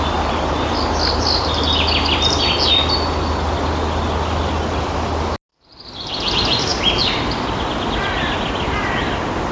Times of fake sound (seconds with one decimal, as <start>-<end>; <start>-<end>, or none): 5.5-6.3